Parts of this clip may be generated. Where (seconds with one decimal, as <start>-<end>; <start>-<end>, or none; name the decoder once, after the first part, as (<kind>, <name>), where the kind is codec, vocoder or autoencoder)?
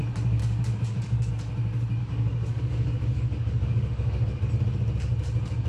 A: 0.4-1.3 (codec, DAC); 2.0-4.5